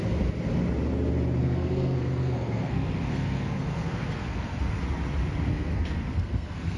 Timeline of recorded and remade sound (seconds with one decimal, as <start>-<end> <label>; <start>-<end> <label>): 0.0-1.4 recorded; 1.4-4.8 remade; 4.8-5.5 recorded; 5.5-6.8 remade